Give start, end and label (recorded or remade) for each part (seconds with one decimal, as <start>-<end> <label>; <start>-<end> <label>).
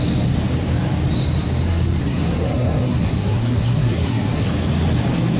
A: 0.0-1.7 recorded; 1.7-4.5 remade; 4.5-5.4 recorded